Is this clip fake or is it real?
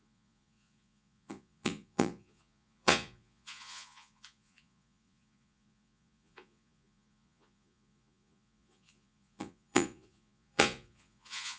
fake